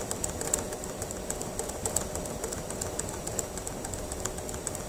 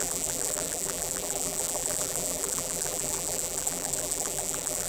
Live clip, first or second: first